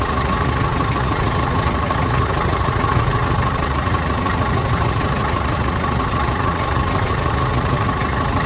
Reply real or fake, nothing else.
fake